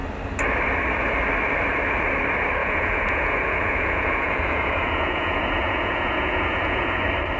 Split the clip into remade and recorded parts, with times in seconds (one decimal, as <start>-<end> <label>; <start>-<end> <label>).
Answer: 0.0-2.6 recorded; 2.6-7.0 remade; 7.0-7.4 recorded